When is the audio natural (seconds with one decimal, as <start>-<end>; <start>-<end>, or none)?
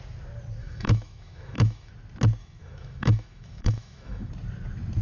0.0-0.6; 1.9-2.4; 4.3-5.0